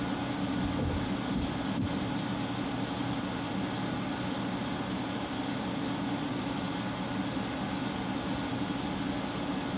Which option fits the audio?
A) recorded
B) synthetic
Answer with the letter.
A